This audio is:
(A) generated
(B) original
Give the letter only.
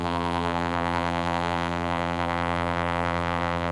A